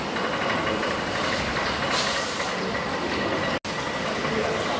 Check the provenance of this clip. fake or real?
real